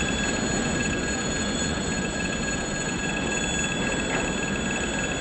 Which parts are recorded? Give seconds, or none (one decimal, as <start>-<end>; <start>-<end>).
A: 0.0-0.6; 3.4-5.2